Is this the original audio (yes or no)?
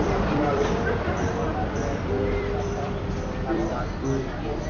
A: no